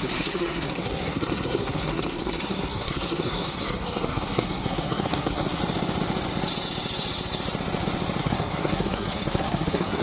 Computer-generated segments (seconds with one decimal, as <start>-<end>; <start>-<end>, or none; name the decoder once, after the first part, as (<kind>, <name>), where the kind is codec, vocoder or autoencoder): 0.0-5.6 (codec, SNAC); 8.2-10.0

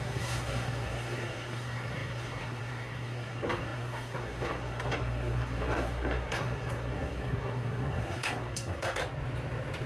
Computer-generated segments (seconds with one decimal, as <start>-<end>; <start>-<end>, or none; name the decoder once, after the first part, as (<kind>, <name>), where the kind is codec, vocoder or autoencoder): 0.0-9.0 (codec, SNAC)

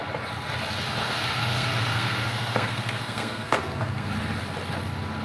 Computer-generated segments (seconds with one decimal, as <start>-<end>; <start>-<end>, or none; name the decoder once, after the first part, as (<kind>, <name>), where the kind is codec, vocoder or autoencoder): 1.0-4.1 (codec, SNAC)